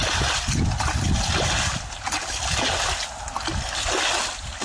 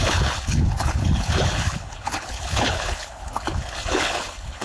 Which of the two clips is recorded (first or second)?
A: first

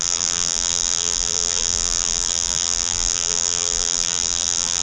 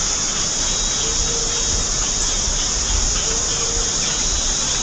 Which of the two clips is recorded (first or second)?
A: second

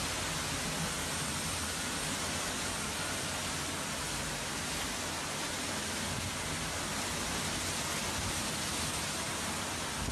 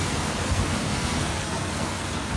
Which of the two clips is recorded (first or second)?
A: first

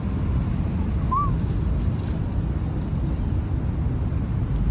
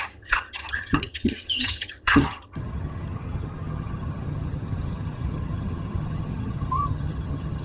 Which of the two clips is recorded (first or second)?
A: first